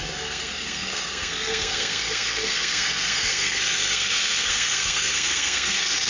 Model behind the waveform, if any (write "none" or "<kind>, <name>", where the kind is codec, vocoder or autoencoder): codec, SNAC